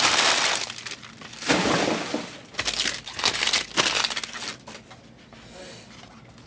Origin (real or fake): real